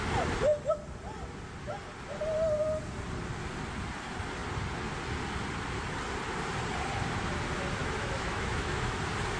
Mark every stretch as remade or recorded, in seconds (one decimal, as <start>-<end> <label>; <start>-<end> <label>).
0.0-7.8 recorded; 7.8-9.0 remade; 9.0-9.4 recorded